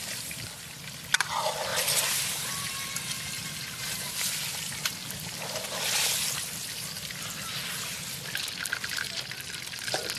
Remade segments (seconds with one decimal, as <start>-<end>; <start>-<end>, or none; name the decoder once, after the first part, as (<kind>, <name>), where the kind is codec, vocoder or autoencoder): 1.7-2.5 (vocoder, BigVGAN v2); 3.4-4.1

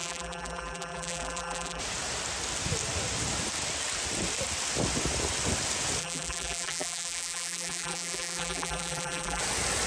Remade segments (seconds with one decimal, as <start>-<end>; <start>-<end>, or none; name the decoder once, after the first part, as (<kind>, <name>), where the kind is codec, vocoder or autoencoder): 0.0-1.8 (vocoder, BigVGAN v2); 6.0-9.4

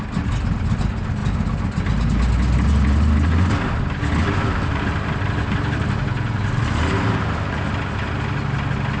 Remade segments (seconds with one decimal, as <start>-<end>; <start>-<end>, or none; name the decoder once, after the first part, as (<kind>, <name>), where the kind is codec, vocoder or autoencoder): 4.2-7.8 (vocoder, BigVGAN v2)